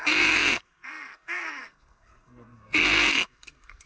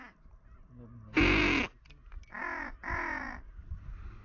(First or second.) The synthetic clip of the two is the first